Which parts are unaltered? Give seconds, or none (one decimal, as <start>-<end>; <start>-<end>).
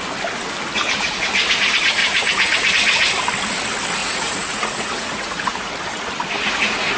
0.0-2.0; 2.7-4.0; 5.7-6.5